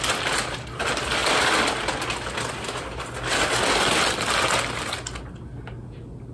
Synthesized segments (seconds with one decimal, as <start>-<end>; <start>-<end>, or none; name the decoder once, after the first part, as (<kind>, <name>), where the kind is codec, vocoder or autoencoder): none